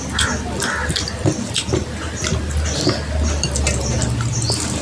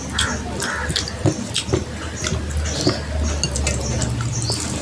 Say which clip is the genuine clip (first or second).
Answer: second